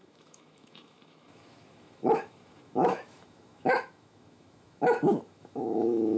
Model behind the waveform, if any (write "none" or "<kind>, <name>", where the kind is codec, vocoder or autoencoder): autoencoder, DAC-VAE